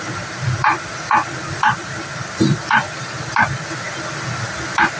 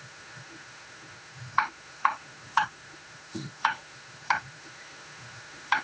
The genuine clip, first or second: first